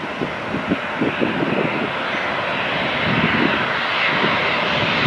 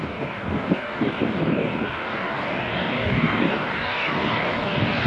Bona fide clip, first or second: first